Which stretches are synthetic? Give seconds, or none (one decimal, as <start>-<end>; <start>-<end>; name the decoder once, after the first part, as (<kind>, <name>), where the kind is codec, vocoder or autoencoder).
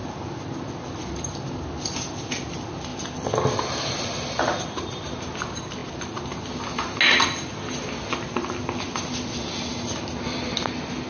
none